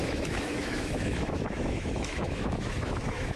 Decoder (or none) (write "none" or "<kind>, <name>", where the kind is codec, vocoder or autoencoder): autoencoder, DAC-VAE